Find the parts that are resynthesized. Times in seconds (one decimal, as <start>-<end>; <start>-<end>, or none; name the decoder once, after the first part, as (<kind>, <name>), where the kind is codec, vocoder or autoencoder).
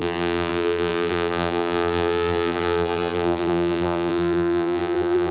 0.0-5.3 (vocoder, BigVGAN v2)